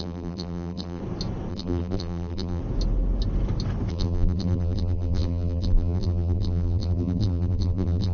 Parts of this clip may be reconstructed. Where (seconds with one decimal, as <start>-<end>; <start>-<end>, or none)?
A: 0.0-1.0; 1.5-2.6; 3.9-8.1